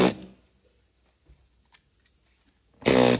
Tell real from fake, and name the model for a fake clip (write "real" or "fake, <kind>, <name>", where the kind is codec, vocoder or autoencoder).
real